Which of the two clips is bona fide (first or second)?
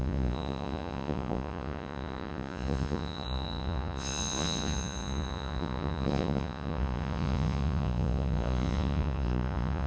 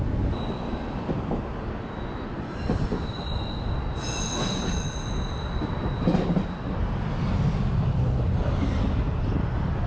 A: second